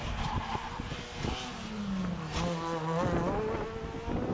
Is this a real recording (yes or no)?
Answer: yes